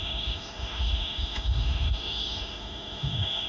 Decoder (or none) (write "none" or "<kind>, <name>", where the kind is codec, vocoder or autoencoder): autoencoder, DAC-VAE